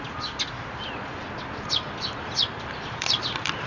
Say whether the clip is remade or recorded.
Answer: recorded